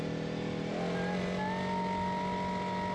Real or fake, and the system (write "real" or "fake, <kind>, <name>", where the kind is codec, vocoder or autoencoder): real